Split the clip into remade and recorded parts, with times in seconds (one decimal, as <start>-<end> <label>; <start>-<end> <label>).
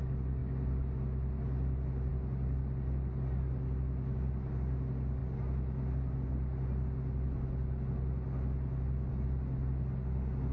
0.0-10.5 recorded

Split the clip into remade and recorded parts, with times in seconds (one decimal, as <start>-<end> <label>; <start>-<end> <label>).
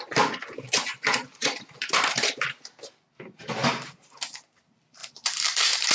0.0-1.3 recorded; 1.3-2.3 remade; 2.3-5.0 recorded; 5.0-5.9 remade